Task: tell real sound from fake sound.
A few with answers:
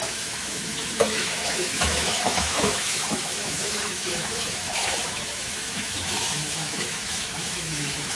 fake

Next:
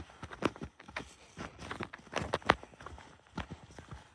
real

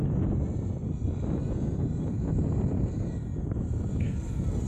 real